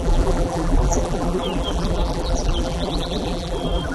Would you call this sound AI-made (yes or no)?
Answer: yes